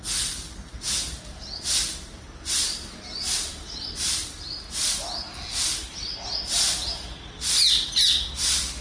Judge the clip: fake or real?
real